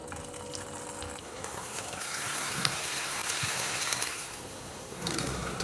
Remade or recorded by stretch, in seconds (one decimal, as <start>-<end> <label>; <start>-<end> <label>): 0.0-1.2 recorded; 1.2-5.6 remade